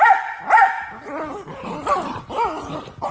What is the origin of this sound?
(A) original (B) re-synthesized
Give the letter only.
A